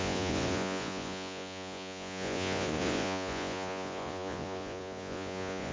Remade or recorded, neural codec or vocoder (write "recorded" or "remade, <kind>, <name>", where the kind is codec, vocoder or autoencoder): remade, vocoder, Vocos